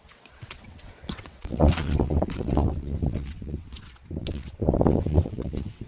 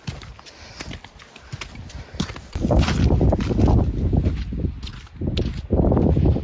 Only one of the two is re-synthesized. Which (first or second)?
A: first